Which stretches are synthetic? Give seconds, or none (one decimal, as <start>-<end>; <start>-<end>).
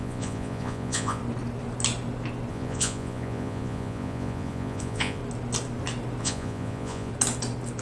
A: 0.0-1.2; 2.5-5.2; 6.2-7.1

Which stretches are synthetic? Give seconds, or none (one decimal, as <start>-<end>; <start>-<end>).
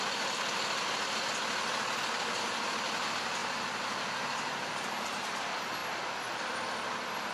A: none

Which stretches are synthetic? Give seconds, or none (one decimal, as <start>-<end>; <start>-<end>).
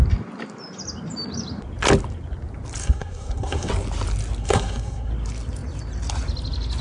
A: 2.8-3.7; 4.4-5.1